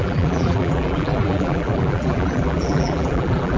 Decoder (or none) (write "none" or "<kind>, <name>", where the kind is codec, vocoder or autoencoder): vocoder, BigVGAN v2